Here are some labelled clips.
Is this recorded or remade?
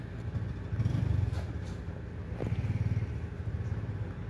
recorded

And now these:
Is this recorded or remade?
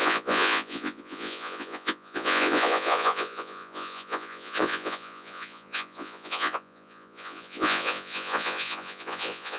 remade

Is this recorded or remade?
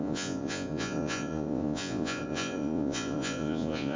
remade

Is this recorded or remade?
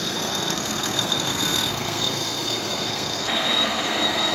remade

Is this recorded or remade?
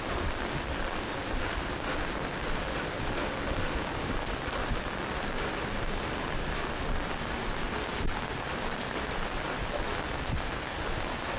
recorded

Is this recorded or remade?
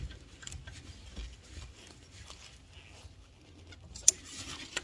recorded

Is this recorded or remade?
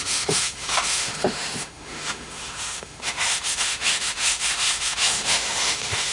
remade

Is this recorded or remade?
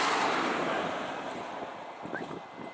recorded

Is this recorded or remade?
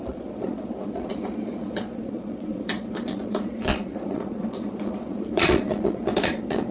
remade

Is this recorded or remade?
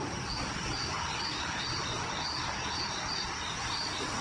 recorded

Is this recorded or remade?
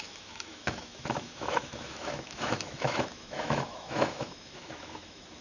remade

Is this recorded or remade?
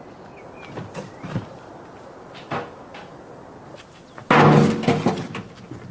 recorded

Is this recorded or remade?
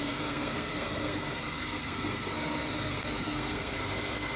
remade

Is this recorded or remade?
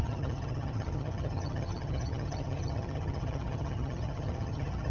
remade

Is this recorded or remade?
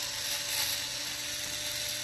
recorded